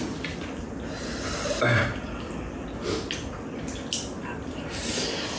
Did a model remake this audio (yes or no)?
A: no